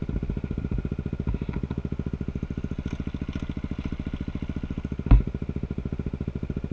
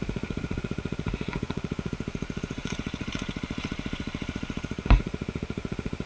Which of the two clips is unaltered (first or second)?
first